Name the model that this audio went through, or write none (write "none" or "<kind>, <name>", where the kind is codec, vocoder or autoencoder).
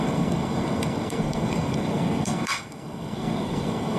codec, SNAC